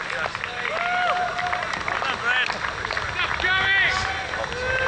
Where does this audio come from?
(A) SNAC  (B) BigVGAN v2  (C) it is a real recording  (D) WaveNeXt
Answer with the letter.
C